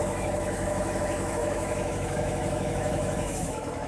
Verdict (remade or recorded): remade